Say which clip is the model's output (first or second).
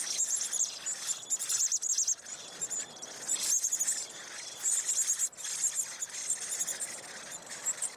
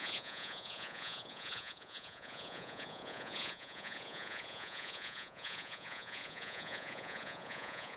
second